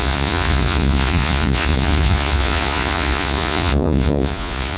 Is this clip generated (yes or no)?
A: yes